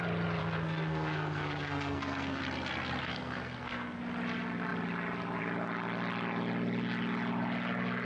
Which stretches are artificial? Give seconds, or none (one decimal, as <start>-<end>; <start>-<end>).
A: 0.4-2.4; 3.0-4.0